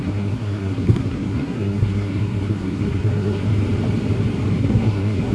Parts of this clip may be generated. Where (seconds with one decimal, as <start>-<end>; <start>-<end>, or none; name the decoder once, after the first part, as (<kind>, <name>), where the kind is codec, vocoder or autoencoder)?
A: 0.0-3.5 (codec, SNAC); 4.6-5.3